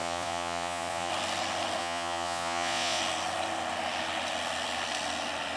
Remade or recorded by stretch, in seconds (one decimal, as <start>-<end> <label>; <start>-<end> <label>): 0.0-1.1 remade; 1.1-1.8 recorded; 1.8-3.0 remade; 3.0-5.6 recorded